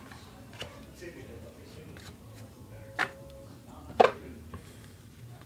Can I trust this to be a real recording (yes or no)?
no